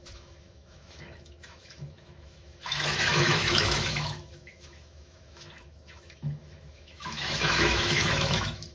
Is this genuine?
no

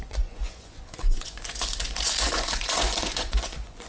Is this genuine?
no